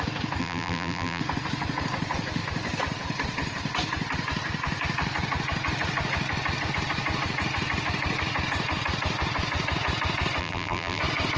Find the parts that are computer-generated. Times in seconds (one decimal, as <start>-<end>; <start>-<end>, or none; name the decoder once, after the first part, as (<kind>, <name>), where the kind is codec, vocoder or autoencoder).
0.4-1.2 (vocoder, BigVGAN v2); 10.4-11.0